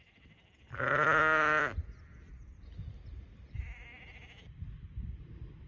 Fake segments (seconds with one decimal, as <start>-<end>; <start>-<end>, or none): none